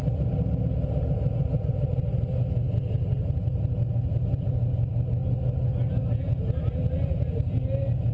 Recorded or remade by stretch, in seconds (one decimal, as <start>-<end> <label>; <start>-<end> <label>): 0.0-8.1 recorded